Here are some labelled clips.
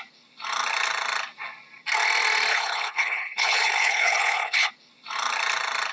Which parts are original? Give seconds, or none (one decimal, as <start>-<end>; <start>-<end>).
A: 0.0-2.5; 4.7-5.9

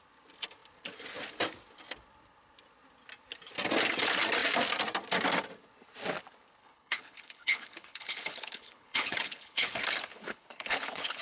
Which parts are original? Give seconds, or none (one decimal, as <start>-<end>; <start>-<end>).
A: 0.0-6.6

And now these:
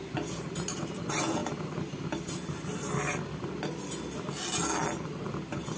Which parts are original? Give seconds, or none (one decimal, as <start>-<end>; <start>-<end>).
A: 0.0-5.8

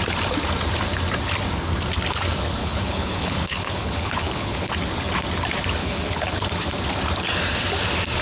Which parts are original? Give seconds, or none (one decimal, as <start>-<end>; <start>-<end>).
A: 0.0-2.6; 4.7-5.8; 6.3-8.2

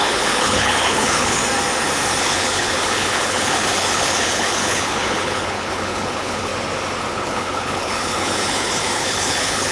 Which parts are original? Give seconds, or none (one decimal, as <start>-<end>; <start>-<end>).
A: 1.4-2.2; 6.5-7.1